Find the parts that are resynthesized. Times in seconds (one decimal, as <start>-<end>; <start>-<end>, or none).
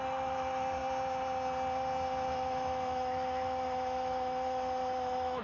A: 0.0-0.8; 2.3-5.4